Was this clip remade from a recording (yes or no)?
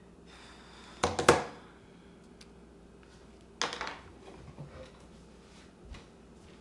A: no